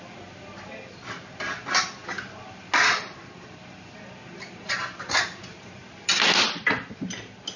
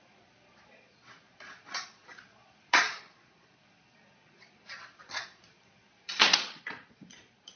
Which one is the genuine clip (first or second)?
first